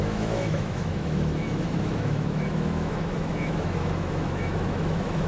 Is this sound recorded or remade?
remade